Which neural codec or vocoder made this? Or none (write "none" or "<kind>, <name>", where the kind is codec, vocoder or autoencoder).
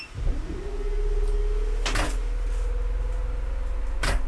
none